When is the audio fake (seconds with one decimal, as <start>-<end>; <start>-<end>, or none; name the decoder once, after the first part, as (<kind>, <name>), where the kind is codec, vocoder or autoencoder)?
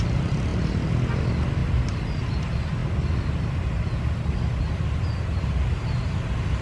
none